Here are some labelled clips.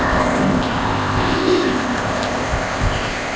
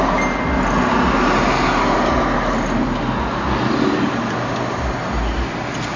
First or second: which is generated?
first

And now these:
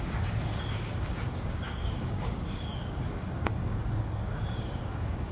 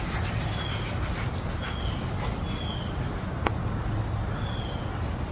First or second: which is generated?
first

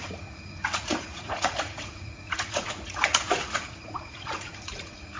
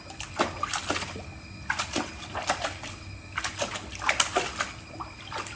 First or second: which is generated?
first